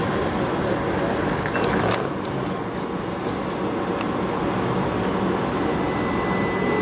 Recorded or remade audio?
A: recorded